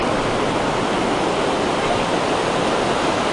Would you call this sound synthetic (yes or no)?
no